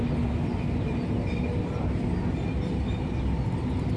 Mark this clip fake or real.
real